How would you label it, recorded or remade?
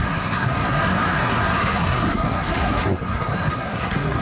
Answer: remade